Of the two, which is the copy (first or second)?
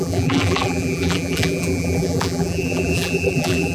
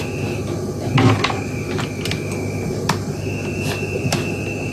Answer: first